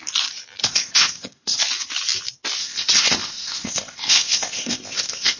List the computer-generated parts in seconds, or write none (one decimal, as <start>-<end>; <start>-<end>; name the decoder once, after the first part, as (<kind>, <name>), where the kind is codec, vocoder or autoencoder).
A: 0.6-1.6 (codec, ZipCodec); 2.6-5.4